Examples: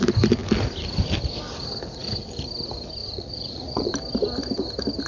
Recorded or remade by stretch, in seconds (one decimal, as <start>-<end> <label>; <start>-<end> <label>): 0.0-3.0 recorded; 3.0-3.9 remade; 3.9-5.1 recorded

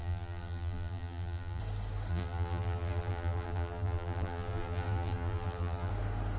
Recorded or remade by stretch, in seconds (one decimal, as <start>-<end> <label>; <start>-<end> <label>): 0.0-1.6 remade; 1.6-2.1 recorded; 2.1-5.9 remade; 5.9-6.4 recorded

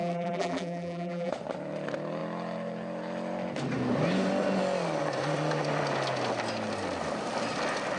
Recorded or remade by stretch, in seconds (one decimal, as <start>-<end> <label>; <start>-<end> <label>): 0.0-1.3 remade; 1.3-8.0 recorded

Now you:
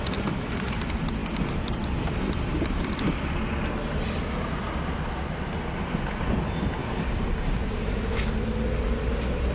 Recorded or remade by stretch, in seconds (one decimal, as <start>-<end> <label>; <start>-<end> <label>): 0.0-9.5 recorded